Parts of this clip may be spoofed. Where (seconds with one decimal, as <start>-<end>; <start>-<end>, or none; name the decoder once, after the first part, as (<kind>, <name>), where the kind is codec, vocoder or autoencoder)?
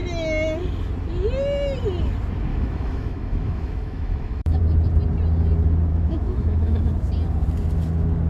2.5-4.6 (autoencoder, DAC-VAE); 5.9-6.8